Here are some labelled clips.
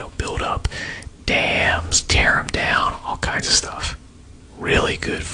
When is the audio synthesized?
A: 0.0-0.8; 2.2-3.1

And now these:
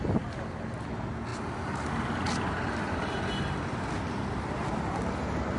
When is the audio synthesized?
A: none